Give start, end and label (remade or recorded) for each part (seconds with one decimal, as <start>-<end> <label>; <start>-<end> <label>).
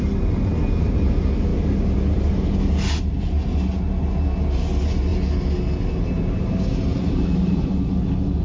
0.0-6.9 recorded; 6.9-7.7 remade; 7.7-8.4 recorded